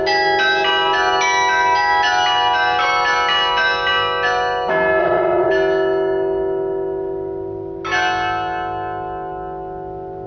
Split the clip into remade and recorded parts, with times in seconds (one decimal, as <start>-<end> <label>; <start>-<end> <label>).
0.0-5.0 recorded; 5.0-5.5 remade; 5.5-10.3 recorded